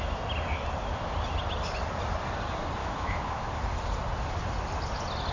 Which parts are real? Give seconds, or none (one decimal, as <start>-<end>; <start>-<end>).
0.0-2.8; 3.5-5.3